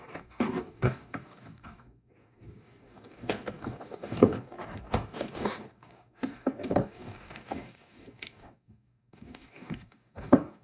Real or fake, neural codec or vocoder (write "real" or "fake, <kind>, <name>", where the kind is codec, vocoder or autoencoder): fake, codec, DAC